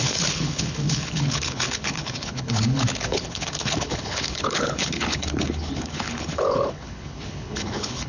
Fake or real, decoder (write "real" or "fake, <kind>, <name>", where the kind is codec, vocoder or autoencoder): fake, codec, HILCodec